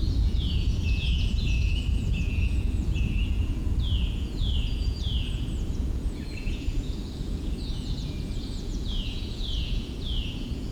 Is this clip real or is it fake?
fake